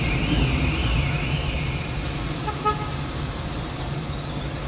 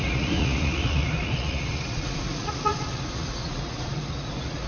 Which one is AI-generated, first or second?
second